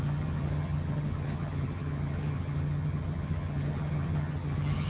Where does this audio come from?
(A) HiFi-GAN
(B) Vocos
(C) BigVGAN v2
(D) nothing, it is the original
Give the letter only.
A